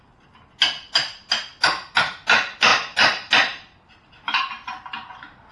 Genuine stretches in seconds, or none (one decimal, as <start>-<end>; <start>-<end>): 0.0-2.7; 4.7-5.5

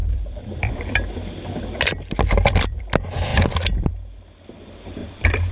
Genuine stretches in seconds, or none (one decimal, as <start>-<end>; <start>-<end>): 2.8-3.3; 3.9-5.0

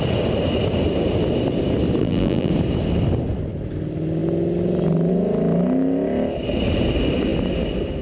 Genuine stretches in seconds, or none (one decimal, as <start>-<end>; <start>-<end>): 0.0-2.0; 2.5-8.0

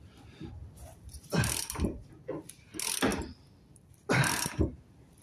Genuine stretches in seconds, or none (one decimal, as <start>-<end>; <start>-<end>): 0.0-0.6; 2.4-3.1; 4.5-5.2